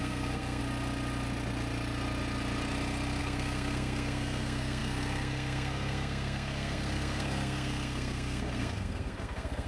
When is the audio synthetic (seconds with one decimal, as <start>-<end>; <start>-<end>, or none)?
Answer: 0.0-0.6; 3.2-9.7